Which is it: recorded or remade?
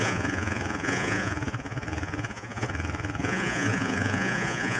remade